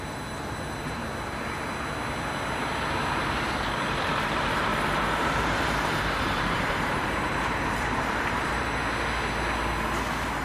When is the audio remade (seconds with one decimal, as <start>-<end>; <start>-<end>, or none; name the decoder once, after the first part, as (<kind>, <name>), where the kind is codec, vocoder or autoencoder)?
0.0-1.0 (vocoder, BigVGAN v2); 3.9-8.8